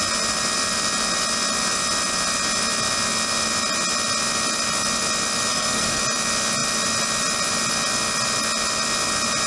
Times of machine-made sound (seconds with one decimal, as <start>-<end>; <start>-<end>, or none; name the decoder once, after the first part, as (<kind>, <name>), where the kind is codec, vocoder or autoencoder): 5.5-6.0 (codec, SNAC)